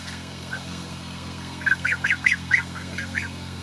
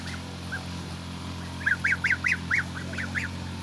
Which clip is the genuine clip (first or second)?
second